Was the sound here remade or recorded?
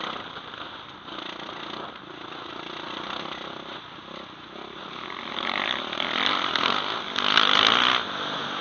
recorded